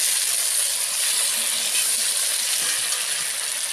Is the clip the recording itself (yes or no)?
yes